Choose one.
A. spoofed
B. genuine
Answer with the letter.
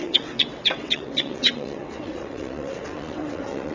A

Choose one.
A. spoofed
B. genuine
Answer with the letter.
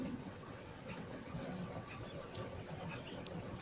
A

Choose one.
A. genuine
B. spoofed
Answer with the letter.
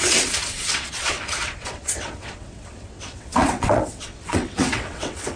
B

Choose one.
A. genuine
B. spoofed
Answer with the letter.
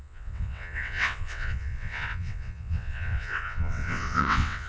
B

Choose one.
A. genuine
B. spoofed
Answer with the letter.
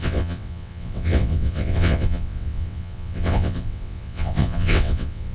B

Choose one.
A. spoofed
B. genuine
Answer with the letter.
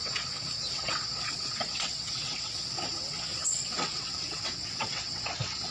A